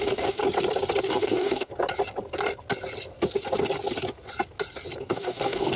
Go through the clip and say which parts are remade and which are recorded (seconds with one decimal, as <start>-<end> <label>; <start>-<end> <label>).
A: 0.0-0.4 remade; 0.4-1.0 recorded; 1.0-1.7 remade; 1.7-5.0 recorded; 5.0-5.8 remade